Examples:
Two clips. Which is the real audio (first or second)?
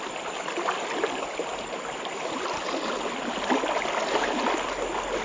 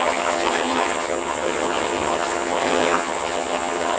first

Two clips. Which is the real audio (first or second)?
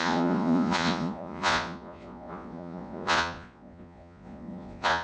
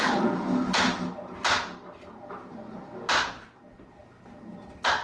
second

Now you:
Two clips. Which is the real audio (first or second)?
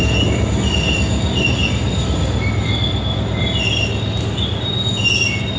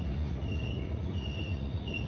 first